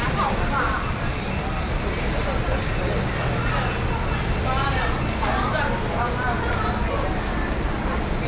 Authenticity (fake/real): real